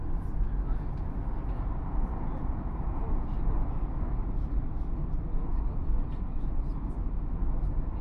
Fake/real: real